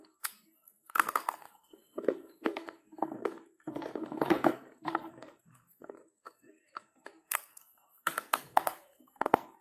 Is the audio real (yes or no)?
no